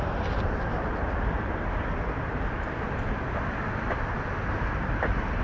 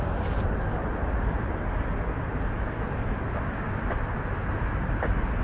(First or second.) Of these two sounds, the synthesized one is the first